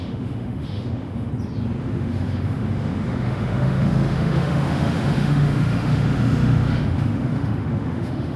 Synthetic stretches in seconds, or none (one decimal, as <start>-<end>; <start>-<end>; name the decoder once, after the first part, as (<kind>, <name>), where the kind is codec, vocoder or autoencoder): 0.0-1.3 (autoencoder, DAC-VAE); 1.8-8.4